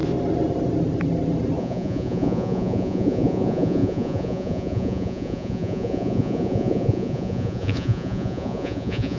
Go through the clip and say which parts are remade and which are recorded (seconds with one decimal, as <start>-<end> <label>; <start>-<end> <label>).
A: 0.0-1.6 recorded; 1.6-9.2 remade